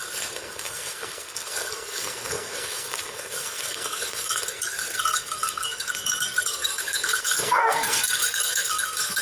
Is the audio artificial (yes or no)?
yes